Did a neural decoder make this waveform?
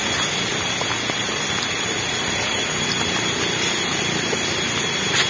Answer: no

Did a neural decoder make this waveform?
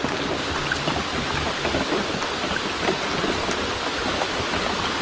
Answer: no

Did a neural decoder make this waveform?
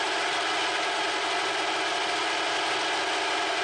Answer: no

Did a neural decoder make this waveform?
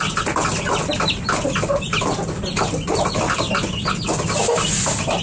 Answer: no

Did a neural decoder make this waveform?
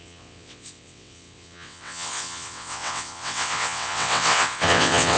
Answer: yes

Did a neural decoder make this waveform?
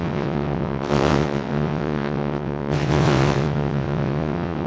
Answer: yes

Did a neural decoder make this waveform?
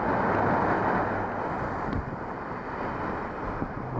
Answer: no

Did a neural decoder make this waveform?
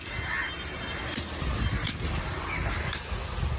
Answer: no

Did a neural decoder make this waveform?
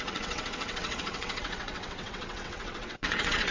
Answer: yes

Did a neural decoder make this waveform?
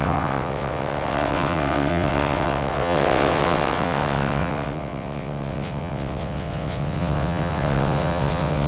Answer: yes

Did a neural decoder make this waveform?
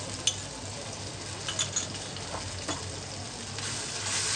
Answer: no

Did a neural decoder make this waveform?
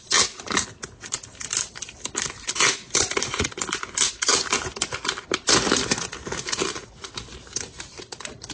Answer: no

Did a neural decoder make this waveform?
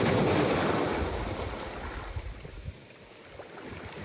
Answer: no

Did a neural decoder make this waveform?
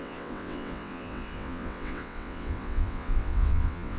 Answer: yes